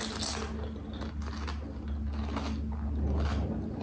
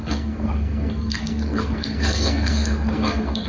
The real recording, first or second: first